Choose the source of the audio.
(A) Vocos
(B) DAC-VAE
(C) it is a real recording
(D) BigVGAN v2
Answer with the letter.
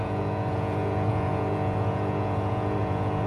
A